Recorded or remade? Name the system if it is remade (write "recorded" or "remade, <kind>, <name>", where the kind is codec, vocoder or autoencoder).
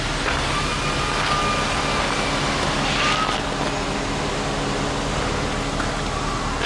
recorded